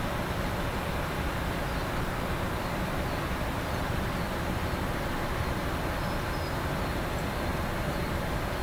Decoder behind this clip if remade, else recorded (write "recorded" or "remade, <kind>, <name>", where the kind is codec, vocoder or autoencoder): remade, vocoder, BigVGAN v2